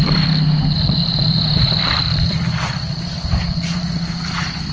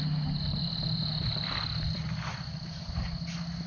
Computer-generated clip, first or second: first